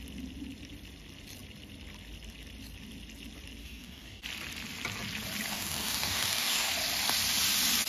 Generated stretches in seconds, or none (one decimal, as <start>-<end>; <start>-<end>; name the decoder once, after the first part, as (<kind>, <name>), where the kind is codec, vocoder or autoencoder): 3.6-4.2 (codec, DAC); 5.5-6.7